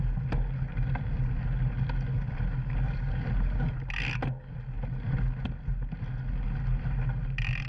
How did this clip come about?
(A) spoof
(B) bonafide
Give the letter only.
B